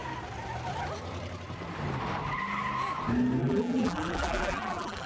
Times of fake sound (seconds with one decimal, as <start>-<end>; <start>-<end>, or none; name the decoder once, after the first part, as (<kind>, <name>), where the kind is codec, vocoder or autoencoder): 3.4-5.1 (vocoder, BigVGAN v2)